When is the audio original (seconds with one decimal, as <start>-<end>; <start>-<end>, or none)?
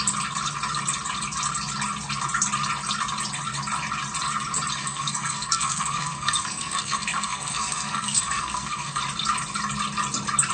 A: 0.0-4.8; 9.0-10.5